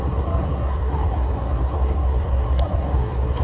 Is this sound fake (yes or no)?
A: yes